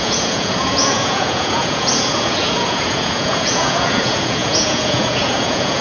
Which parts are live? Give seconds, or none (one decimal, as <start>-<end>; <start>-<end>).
none